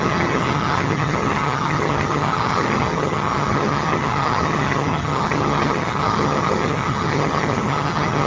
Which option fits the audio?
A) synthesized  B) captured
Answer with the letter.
A